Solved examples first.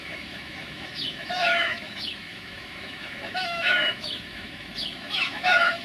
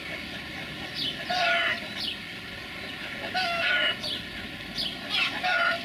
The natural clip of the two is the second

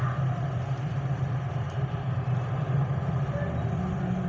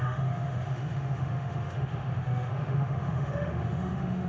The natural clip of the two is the first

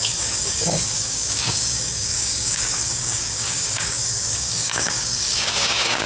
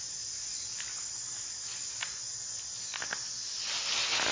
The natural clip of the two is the second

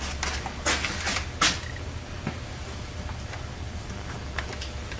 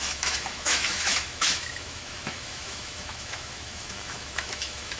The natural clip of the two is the first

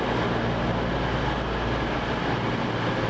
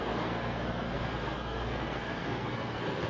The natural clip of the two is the first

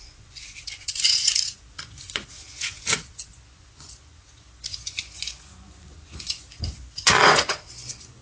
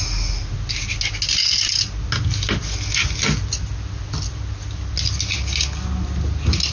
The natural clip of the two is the second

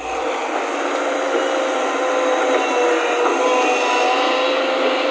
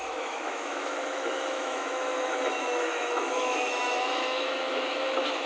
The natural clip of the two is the first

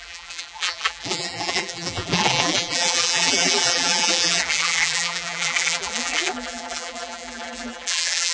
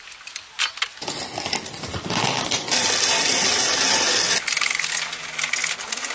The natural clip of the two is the second